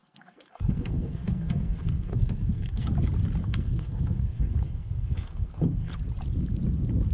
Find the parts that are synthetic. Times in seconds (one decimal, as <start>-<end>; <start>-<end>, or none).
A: 0.0-2.9; 3.4-6.0